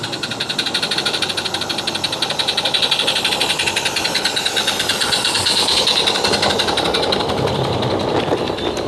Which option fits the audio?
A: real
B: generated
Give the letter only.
A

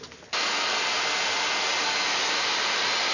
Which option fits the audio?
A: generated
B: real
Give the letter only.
B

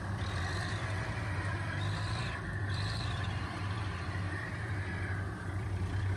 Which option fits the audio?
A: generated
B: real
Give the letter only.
A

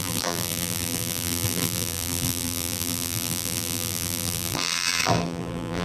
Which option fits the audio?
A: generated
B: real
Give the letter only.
A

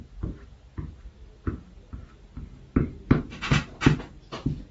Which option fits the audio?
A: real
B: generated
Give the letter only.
A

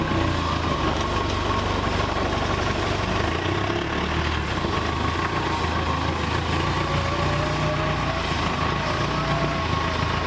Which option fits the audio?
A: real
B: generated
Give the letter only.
A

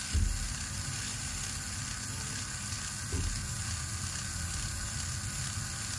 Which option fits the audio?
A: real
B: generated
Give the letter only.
A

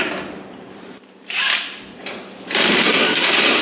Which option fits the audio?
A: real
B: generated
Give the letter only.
B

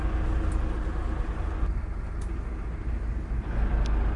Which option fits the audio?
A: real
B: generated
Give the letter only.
A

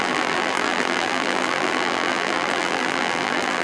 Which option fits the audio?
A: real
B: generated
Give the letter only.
B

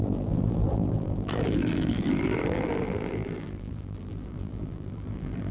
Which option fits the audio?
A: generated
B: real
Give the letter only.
A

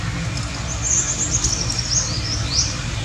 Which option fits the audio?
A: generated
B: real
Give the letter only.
B